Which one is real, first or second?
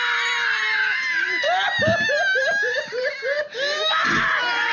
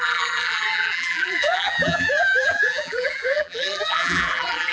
first